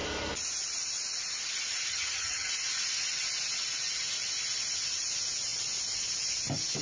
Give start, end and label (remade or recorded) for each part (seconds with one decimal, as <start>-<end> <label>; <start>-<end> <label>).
0.0-1.9 recorded; 1.9-2.5 remade; 2.5-6.8 recorded